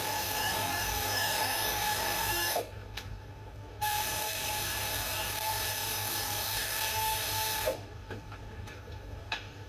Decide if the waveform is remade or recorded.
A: remade